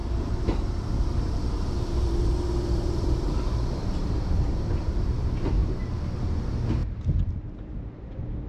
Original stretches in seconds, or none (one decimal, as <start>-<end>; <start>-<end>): 5.1-6.8; 8.1-8.5